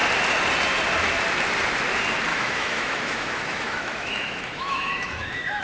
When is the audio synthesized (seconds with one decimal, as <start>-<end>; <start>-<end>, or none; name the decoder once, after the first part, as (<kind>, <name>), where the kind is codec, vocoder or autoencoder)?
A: 2.3-5.6 (autoencoder, DAC-VAE)